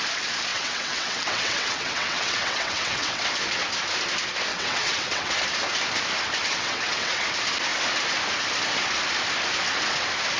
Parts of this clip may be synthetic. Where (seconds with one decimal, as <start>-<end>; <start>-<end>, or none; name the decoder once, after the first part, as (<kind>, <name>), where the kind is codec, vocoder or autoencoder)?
0.5-3.3 (vocoder, WaveNeXt); 4.5-5.3; 6.4-7.3